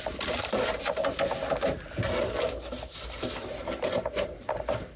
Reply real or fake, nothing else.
fake